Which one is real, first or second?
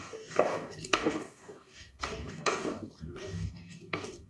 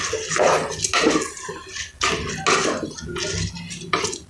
second